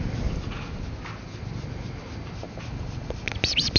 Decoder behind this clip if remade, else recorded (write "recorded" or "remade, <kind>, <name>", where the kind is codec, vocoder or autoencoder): recorded